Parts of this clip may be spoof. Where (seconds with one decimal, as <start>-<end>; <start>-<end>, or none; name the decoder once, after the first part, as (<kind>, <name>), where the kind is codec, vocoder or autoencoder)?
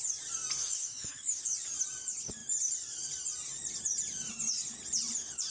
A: 0.6-1.4 (autoencoder, DAC-VAE)